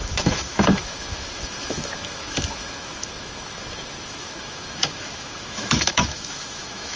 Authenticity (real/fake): fake